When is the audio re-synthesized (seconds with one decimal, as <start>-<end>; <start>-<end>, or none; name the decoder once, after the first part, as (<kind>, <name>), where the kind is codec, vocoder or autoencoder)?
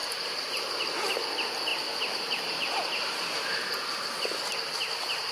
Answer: 0.0-0.6 (vocoder, BigVGAN v2)